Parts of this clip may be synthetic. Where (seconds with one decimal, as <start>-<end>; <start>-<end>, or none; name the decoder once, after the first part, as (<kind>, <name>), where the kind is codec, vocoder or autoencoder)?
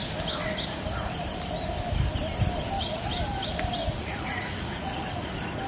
3.8-5.2 (vocoder, Vocos)